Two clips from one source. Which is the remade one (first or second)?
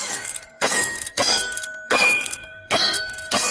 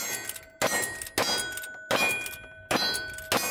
first